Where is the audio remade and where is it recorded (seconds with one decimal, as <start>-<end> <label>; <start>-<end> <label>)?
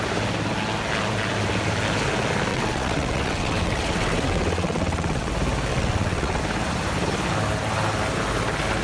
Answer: 0.0-2.5 recorded; 2.5-5.3 remade; 5.3-5.7 recorded; 5.7-6.4 remade; 6.4-8.8 recorded